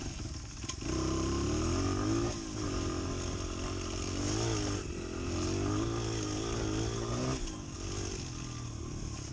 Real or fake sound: real